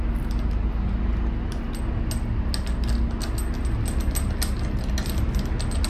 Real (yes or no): yes